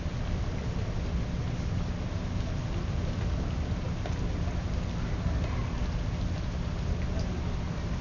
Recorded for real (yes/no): yes